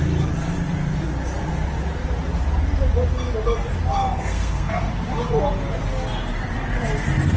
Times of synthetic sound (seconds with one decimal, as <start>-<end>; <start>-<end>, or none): 4.0-4.9